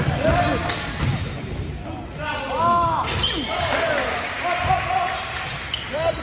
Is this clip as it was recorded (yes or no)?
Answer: yes